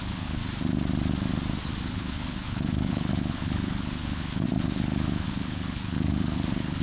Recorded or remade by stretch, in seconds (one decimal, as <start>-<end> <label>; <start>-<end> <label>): 0.0-0.4 remade; 0.4-1.9 recorded; 1.9-6.8 remade